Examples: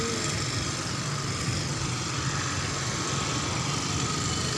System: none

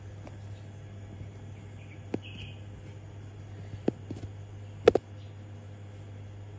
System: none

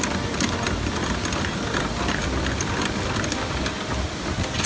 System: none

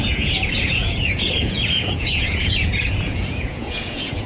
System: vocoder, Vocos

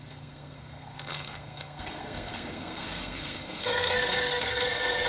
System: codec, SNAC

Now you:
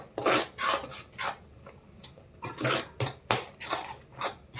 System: none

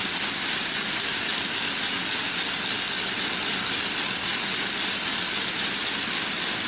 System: none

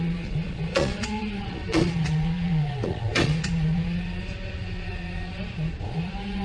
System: vocoder, Vocos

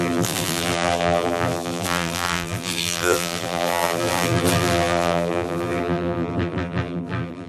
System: vocoder, BigVGAN v2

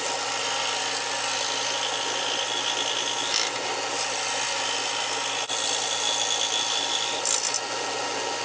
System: none